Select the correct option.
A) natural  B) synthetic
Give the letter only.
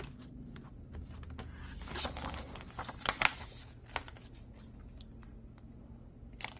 A